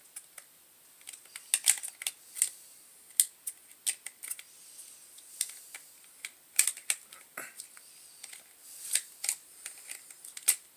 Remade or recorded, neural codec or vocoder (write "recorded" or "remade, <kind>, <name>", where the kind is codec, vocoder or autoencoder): recorded